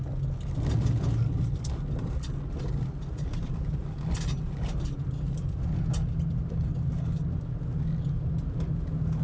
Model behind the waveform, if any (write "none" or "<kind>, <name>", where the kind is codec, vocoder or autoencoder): none